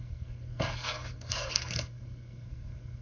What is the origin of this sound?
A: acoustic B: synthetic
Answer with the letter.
B